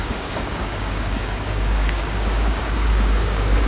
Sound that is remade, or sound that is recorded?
remade